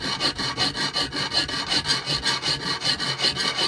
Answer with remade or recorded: recorded